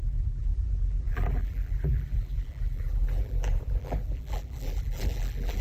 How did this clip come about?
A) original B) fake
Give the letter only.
B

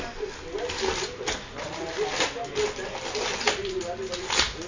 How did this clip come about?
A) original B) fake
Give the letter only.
A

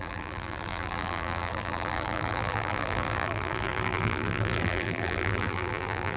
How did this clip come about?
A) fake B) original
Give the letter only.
A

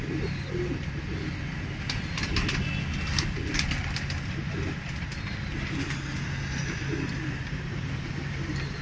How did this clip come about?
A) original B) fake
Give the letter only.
A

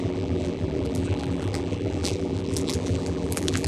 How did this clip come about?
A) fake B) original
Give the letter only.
A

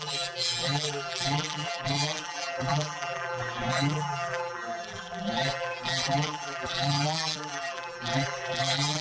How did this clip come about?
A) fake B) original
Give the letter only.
A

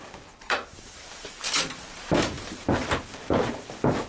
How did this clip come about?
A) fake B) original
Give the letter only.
A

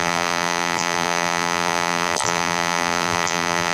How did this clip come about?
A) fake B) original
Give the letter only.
A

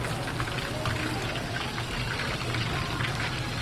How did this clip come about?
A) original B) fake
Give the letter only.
A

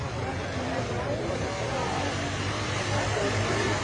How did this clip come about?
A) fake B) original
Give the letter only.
B